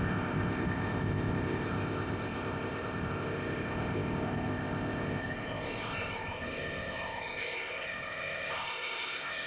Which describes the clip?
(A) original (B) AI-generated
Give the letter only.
B